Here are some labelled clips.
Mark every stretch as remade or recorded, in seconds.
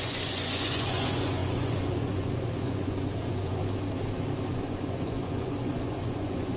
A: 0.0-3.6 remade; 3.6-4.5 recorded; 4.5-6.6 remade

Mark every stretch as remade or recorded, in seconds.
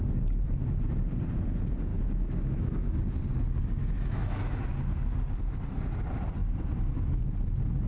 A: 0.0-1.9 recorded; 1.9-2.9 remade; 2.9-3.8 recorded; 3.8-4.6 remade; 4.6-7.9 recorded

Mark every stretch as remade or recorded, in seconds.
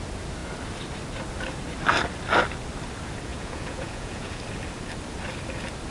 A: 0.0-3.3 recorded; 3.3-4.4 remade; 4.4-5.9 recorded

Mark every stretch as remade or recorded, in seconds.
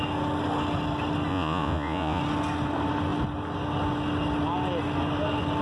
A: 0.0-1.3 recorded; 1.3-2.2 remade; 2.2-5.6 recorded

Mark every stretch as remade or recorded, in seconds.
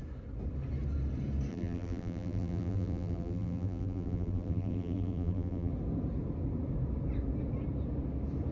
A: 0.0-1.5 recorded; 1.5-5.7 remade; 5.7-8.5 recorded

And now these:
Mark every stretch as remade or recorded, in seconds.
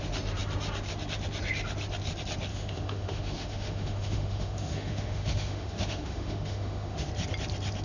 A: 0.0-2.5 recorded; 2.5-7.1 remade; 7.1-7.8 recorded